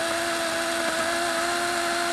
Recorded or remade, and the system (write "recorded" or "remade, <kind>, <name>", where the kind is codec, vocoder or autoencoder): recorded